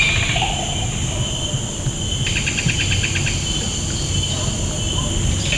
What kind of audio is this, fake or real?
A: real